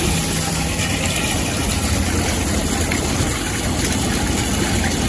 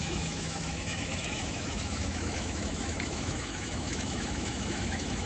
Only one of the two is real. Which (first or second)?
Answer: first